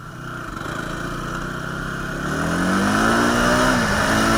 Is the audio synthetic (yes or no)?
no